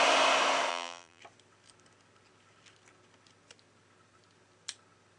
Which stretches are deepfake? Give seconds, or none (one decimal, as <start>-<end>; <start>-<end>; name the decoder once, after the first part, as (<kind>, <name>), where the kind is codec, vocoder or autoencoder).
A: 0.7-1.2 (vocoder, BigVGAN v2)